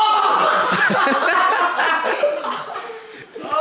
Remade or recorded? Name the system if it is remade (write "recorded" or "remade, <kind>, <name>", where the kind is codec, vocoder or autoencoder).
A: recorded